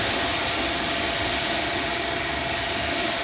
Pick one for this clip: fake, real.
real